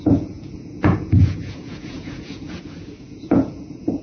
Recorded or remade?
remade